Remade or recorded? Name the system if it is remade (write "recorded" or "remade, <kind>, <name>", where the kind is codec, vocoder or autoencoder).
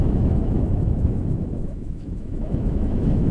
remade, autoencoder, DAC-VAE